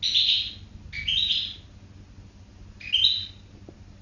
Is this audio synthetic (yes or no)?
no